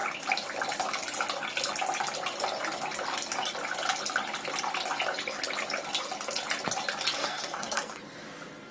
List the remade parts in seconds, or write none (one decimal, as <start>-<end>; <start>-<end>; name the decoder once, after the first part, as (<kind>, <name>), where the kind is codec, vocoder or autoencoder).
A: 7.2-8.0 (codec, SNAC)